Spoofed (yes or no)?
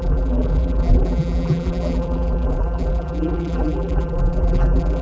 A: yes